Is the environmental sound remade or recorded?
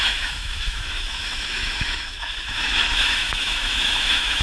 remade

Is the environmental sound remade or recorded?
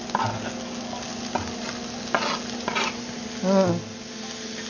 recorded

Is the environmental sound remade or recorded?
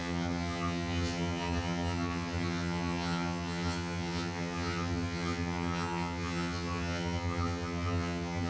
remade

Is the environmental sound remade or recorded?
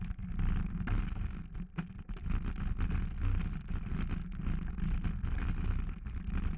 recorded